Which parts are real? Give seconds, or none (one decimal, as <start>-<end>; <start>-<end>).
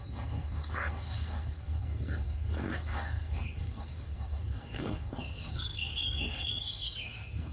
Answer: none